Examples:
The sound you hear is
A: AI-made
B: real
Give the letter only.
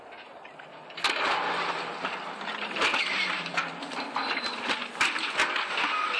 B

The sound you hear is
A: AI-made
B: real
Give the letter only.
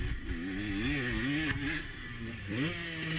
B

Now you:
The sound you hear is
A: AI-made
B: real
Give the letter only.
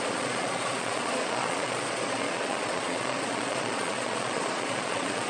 A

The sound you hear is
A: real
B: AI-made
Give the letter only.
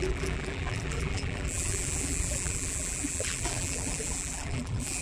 B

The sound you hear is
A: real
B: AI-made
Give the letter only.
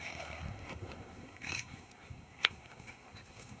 B